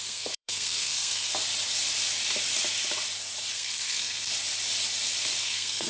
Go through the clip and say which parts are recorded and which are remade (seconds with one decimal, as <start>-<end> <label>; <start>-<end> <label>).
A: 0.0-1.3 remade; 1.3-3.5 recorded; 3.5-4.3 remade; 4.3-5.4 recorded; 5.4-5.9 remade